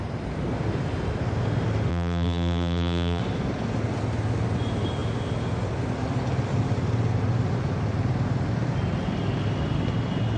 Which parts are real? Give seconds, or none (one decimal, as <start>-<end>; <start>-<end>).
0.0-1.9; 3.2-10.4